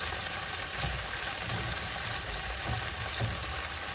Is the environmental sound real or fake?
fake